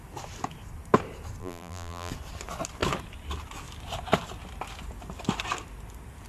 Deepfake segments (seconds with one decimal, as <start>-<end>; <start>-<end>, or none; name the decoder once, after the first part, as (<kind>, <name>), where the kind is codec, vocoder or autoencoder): 1.4-2.1 (vocoder, BigVGAN v2)